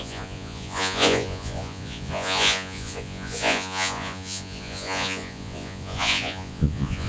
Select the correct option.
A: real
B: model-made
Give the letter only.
B